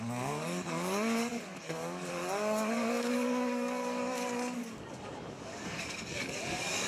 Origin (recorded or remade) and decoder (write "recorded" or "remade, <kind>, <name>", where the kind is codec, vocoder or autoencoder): remade, codec, DAC